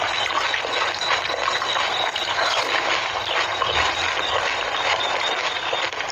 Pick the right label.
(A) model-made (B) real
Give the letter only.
B